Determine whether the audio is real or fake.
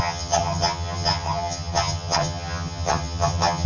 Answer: fake